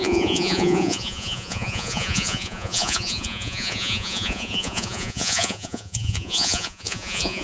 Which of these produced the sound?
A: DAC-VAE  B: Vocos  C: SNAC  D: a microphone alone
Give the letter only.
B